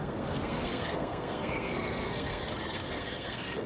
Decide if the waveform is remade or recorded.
remade